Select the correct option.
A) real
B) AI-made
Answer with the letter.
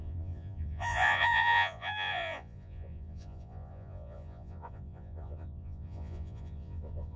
B